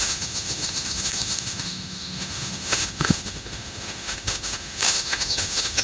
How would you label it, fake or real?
fake